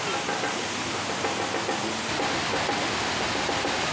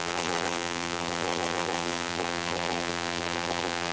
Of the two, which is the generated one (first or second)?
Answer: second